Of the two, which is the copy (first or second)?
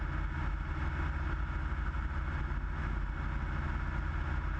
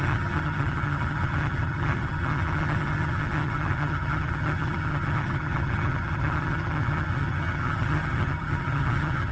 second